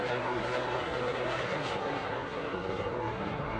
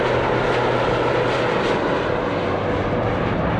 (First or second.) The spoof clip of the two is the first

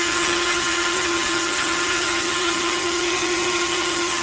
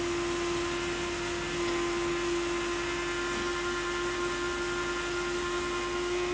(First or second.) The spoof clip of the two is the first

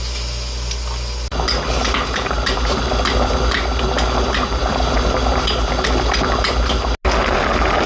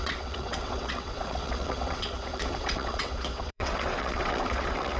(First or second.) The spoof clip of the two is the second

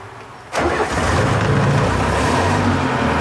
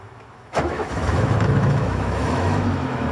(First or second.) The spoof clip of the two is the second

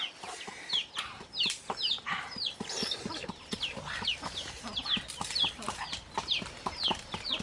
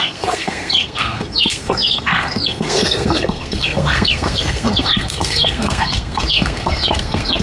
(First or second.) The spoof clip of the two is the second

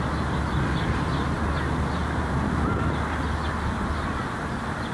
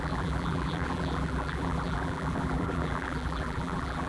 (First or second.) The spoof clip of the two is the second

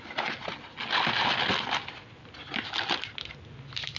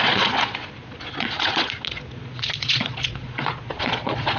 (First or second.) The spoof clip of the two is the second